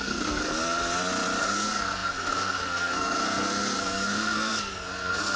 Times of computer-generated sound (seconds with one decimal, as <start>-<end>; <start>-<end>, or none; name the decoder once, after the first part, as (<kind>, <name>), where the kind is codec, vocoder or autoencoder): 0.0-0.5 (codec, SNAC); 1.4-5.4